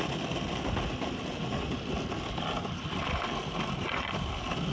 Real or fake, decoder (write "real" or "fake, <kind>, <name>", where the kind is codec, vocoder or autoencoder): real